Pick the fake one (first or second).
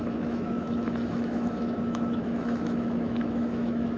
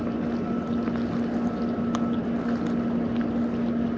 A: first